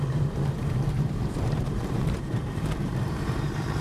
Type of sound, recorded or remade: remade